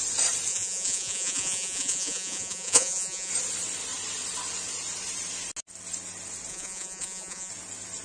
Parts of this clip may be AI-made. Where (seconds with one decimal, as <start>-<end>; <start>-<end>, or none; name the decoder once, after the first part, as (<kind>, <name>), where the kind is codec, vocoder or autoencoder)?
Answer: 0.5-3.3 (vocoder, Vocos); 6.5-7.5